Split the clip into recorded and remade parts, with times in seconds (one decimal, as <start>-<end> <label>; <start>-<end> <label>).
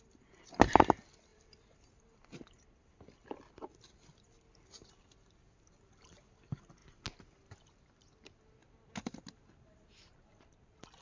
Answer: 0.0-11.0 recorded